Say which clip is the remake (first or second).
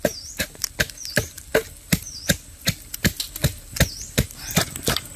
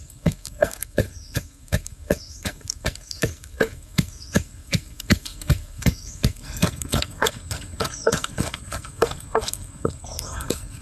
second